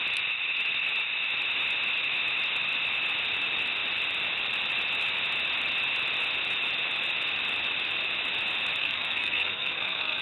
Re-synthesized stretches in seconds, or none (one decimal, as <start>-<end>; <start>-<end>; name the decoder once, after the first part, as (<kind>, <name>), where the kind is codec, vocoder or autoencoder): 8.8-10.2 (codec, SNAC)